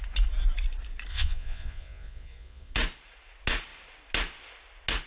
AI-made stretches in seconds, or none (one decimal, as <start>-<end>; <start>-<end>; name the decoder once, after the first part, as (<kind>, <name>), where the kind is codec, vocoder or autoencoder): 1.1-2.7 (vocoder, Vocos)